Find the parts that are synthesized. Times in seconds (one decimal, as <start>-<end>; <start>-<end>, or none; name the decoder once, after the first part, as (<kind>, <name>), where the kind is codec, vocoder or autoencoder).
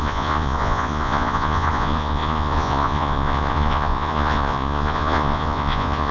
0.0-6.1 (vocoder, Vocos)